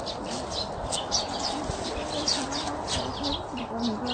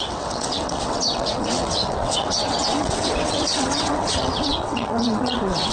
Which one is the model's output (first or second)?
second